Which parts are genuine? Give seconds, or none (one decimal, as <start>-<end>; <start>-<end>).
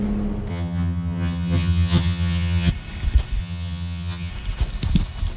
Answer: 0.0-0.5; 2.7-3.4; 4.3-5.4